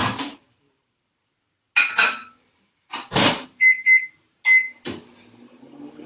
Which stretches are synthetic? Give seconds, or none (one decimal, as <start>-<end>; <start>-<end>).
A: 0.0-1.3; 2.2-4.0

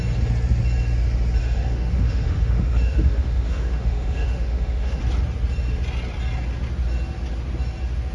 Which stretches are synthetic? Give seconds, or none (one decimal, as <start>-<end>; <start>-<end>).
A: 1.4-5.0

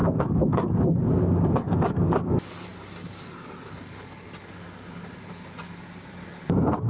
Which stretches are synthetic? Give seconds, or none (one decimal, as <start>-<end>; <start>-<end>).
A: 0.0-2.1

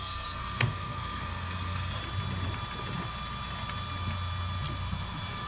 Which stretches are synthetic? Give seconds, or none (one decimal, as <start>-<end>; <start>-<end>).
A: 0.0-2.0

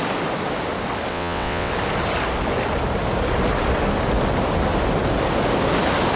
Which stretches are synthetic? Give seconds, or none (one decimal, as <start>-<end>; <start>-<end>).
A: 1.1-1.7

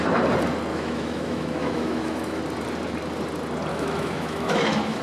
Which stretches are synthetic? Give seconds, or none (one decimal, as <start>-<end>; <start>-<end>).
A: 0.7-2.4; 3.7-5.0